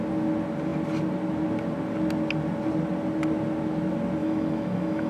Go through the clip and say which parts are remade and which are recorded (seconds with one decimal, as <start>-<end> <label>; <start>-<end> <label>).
0.0-4.2 recorded; 4.2-5.1 remade